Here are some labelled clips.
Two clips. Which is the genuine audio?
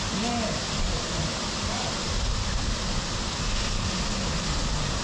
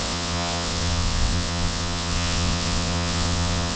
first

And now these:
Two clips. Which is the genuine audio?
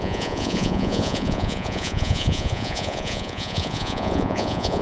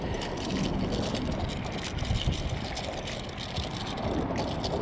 second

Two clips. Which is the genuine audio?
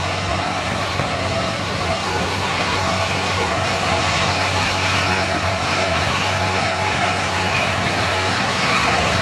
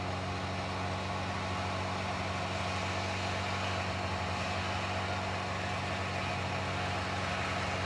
second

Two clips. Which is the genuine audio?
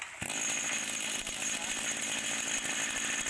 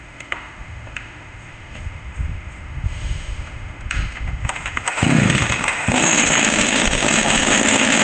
first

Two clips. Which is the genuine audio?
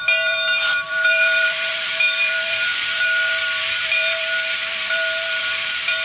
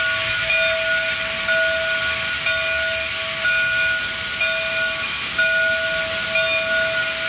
second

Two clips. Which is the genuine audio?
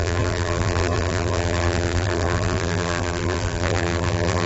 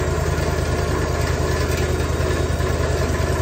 second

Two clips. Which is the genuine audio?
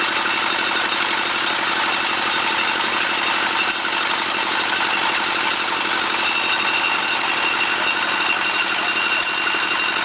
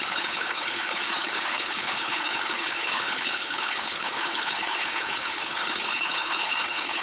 first